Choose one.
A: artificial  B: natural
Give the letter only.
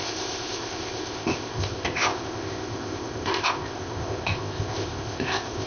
A